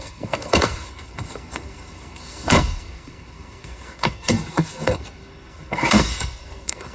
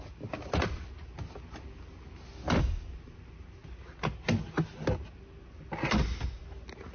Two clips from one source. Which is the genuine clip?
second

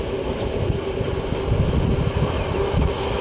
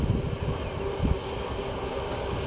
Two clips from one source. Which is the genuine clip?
second